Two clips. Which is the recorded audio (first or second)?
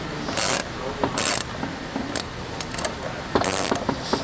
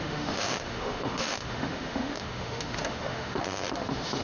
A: first